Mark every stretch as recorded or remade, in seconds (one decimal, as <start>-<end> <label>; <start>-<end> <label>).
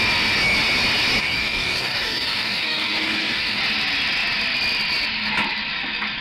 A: 0.0-1.2 recorded; 1.2-3.6 remade; 3.6-6.2 recorded